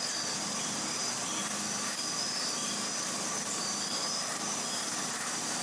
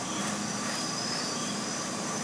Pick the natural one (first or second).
first